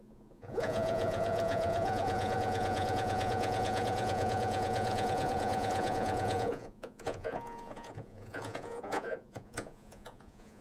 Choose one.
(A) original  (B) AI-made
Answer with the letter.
B